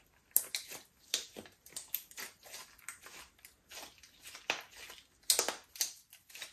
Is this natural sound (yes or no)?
yes